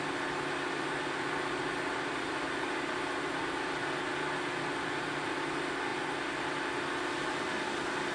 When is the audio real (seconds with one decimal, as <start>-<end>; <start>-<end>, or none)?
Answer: 0.0-8.1